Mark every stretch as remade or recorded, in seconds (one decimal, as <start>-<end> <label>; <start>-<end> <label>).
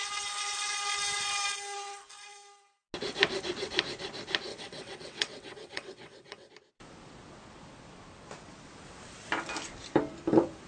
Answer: 0.0-4.5 recorded; 4.5-6.5 remade; 6.5-10.7 recorded